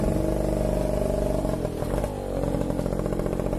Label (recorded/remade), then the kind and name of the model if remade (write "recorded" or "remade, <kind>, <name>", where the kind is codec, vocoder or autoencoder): recorded